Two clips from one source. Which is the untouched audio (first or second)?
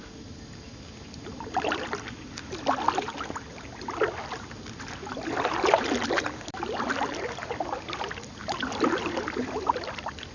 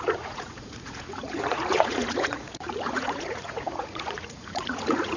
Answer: first